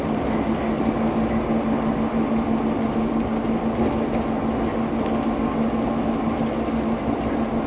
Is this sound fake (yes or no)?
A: no